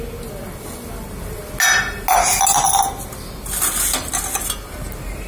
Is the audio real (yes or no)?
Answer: yes